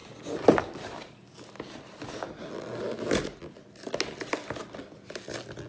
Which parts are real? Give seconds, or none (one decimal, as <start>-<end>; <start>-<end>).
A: 0.0-5.7